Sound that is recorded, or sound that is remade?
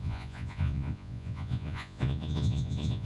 remade